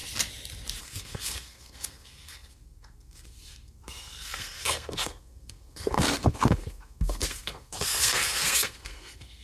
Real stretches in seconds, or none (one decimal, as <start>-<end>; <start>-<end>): 0.0-0.8